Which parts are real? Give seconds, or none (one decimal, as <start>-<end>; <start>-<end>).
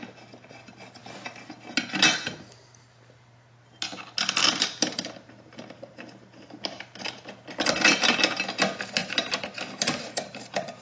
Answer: 0.0-4.4; 7.6-9.0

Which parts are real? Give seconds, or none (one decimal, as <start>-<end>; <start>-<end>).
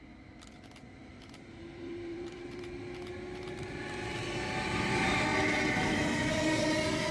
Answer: 0.0-1.0; 2.8-7.1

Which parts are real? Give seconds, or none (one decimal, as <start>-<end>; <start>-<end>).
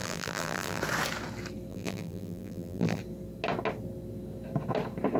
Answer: 0.8-1.7; 3.0-5.2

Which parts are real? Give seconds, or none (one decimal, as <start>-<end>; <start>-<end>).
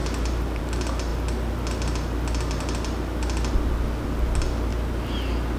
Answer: 0.0-5.6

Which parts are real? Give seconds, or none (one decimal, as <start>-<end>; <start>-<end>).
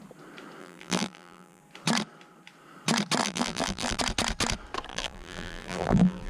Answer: 0.0-0.6; 1.6-3.2; 4.0-4.9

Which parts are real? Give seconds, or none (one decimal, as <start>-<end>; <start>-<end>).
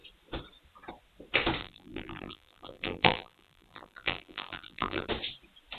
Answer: 0.0-1.6; 5.1-5.8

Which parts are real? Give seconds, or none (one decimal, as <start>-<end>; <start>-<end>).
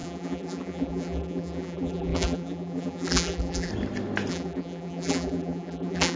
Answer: 3.7-4.3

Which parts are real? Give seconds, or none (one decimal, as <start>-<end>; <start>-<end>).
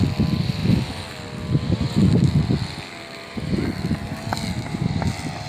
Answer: 0.0-5.5